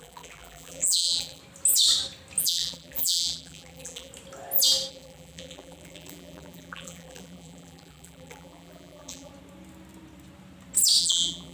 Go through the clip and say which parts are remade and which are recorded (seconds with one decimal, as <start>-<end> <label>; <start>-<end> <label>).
0.0-1.4 remade; 1.4-2.4 recorded; 2.4-4.1 remade; 4.1-4.9 recorded; 4.9-9.3 remade; 9.3-11.0 recorded; 11.0-11.5 remade